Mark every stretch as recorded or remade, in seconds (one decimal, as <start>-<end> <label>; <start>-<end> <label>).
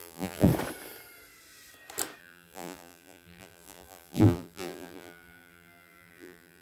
0.0-0.5 remade; 0.5-2.2 recorded; 2.2-6.6 remade